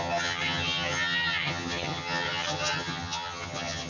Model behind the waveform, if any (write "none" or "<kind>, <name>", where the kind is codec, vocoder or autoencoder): vocoder, HiFi-GAN